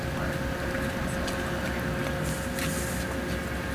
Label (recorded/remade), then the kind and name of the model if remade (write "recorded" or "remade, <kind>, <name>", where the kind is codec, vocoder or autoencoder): recorded